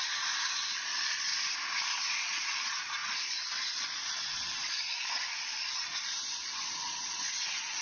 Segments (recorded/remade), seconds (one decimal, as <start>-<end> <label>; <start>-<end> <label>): 0.0-1.3 remade; 1.3-2.1 recorded; 2.1-7.8 remade